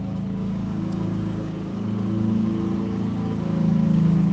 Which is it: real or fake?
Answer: fake